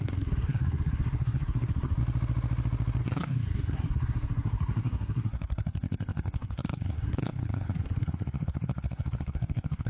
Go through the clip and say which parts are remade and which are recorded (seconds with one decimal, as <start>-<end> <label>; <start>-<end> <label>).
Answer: 0.0-2.0 remade; 2.0-3.0 recorded; 3.0-9.9 remade